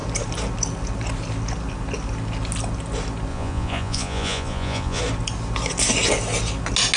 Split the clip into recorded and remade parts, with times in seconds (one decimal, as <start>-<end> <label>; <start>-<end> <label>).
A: 0.0-3.3 recorded; 3.3-5.0 remade; 5.0-7.0 recorded